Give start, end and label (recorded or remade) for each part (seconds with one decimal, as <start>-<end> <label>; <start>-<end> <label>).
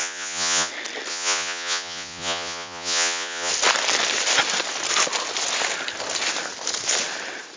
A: 0.0-0.7 remade; 0.7-1.1 recorded; 1.1-3.5 remade; 3.5-7.6 recorded